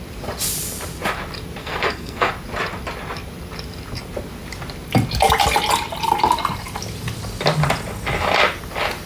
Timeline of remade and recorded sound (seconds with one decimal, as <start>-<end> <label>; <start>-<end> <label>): 0.0-1.6 recorded; 1.6-2.3 remade; 2.3-9.1 recorded